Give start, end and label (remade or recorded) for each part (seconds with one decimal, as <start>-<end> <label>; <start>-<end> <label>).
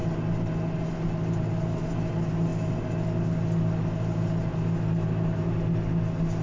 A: 0.0-6.4 recorded